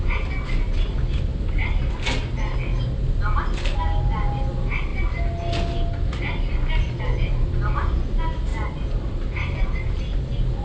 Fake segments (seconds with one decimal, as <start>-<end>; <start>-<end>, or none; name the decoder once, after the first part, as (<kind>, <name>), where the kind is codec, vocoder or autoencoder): none